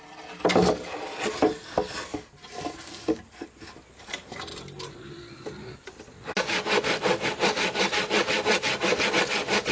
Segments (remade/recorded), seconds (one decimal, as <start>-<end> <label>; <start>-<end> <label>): 0.0-9.7 recorded